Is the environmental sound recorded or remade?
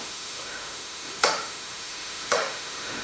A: remade